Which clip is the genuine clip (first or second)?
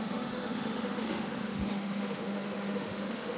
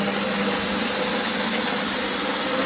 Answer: second